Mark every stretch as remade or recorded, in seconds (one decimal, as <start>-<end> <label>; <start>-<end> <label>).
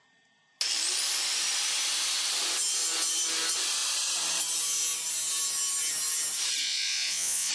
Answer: 0.0-6.6 recorded; 6.6-7.5 remade